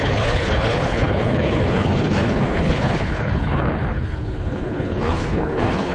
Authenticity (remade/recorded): remade